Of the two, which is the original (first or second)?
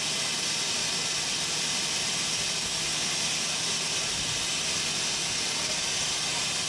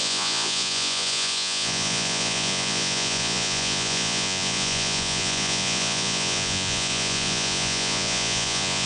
first